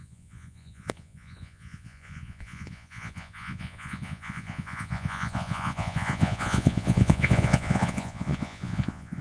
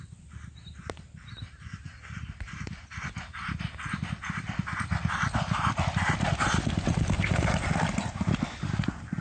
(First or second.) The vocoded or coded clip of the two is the first